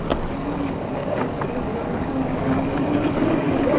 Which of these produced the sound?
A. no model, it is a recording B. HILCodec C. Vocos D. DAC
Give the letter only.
D